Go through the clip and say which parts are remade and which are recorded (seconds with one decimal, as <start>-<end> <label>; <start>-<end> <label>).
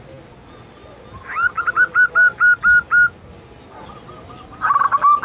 0.0-5.2 recorded